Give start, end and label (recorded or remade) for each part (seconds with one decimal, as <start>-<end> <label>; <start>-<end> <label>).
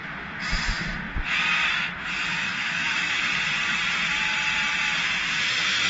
0.0-2.3 recorded; 2.3-3.3 remade; 3.3-5.4 recorded; 5.4-5.9 remade